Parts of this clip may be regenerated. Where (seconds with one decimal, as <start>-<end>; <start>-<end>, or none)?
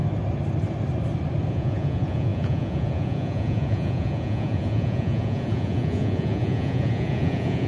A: 1.5-7.7